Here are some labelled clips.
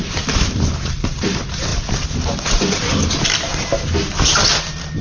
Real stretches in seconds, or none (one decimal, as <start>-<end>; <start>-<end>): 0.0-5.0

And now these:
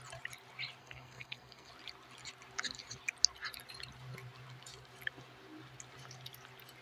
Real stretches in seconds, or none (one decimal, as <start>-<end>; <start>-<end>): 0.0-0.8; 1.7-6.8

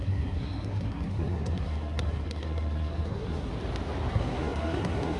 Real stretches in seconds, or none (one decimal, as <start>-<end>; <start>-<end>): 3.5-4.1

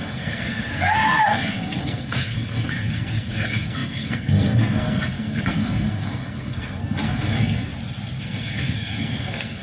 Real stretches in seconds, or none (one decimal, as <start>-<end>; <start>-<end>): 7.7-8.2